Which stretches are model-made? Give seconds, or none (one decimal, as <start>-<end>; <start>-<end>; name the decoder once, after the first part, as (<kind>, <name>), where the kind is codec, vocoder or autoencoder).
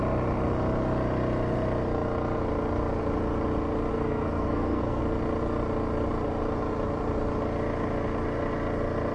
3.9-5.0 (codec, SNAC)